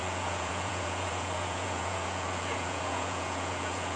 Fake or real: fake